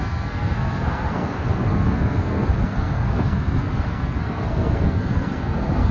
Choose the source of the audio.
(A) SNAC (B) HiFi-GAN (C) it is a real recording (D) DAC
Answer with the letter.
A